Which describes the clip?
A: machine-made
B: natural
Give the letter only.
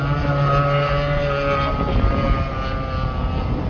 B